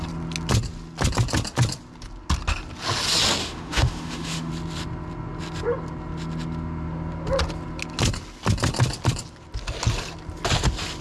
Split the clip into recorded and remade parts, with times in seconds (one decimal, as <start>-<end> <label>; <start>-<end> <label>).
0.0-3.4 recorded; 3.4-4.5 remade; 4.5-11.0 recorded